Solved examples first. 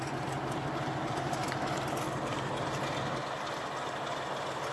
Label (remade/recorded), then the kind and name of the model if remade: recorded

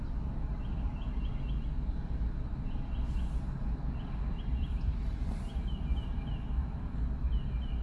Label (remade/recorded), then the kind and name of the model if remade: recorded